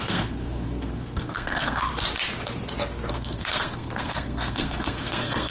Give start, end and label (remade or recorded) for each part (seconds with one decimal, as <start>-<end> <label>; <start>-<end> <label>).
0.0-1.9 remade; 1.9-3.1 recorded; 3.1-5.5 remade